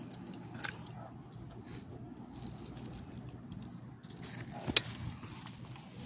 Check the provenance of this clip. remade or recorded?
recorded